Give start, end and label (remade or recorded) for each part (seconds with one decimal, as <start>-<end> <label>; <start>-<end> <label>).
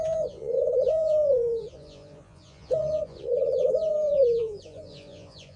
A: 0.0-5.6 remade